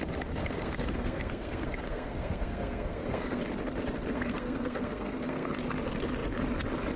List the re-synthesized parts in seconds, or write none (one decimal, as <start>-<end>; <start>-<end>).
0.4-3.4; 4.1-5.5